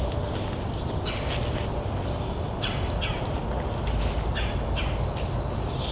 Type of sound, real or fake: real